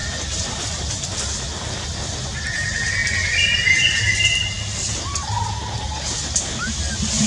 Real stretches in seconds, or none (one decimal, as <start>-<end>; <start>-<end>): 0.0-7.3

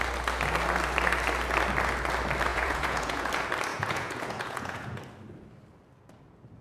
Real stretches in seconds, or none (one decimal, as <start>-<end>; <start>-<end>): 0.0-2.5; 3.3-3.7; 5.0-6.6

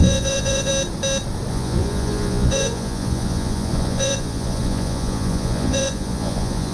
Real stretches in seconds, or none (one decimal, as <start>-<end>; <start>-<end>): 0.7-1.5

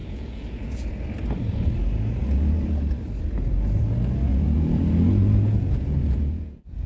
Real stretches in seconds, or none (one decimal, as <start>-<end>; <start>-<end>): 1.0-4.3

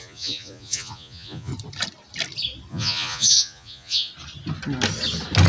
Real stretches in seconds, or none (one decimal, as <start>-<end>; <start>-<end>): 1.5-2.7; 4.1-5.5

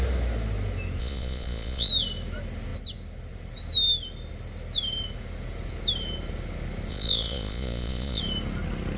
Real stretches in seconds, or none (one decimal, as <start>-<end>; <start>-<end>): 0.0-1.0; 1.9-6.9; 8.2-9.0

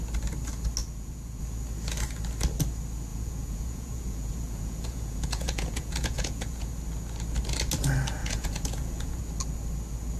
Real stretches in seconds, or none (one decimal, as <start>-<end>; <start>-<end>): 0.0-0.8; 1.4-3.1; 6.7-8.2; 9.2-10.2

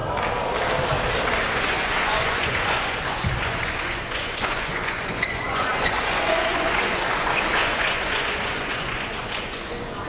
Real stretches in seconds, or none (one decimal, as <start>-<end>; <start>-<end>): 0.0-1.5